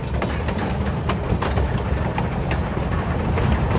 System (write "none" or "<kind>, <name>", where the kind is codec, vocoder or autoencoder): none